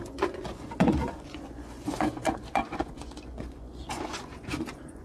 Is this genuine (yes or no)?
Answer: no